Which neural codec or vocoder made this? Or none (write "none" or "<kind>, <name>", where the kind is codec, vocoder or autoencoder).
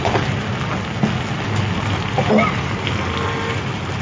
none